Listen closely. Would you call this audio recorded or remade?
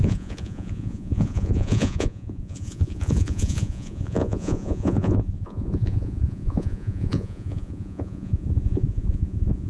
remade